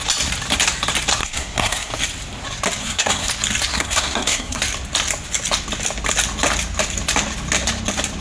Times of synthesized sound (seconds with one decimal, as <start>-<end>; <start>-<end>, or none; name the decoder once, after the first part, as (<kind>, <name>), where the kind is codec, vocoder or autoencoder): 1.2-1.9 (codec, SNAC); 2.8-3.3; 3.7-4.6